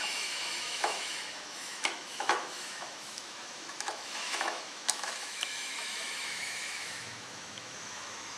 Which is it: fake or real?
fake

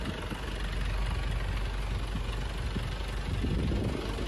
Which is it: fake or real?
real